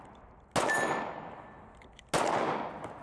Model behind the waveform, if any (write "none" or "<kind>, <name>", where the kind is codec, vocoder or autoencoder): none